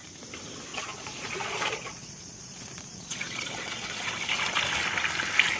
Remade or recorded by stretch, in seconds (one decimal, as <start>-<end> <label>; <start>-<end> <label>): 0.0-0.7 recorded; 0.7-4.1 remade; 4.1-5.6 recorded